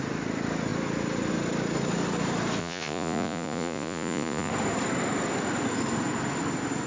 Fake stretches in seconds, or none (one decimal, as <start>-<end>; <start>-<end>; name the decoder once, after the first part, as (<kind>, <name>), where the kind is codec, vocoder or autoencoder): 2.6-4.5 (vocoder, Vocos)